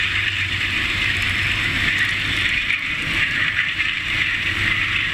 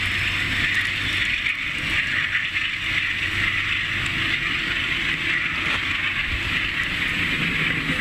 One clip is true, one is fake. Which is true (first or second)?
second